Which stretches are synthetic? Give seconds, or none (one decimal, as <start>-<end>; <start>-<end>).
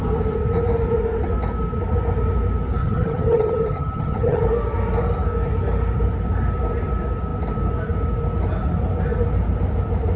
2.8-4.4